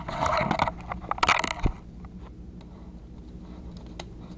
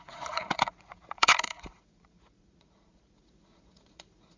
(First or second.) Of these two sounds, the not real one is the second